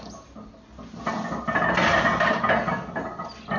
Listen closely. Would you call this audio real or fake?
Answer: real